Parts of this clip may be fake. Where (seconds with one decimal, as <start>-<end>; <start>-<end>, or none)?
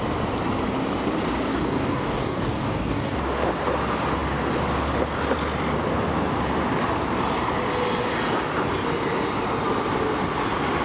1.5-3.2